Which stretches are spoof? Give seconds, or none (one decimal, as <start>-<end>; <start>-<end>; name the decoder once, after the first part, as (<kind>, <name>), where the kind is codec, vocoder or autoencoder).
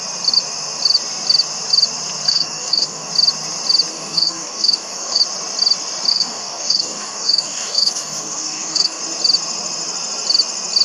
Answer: 2.3-3.1 (codec, DAC); 3.9-5.2; 6.1-9.0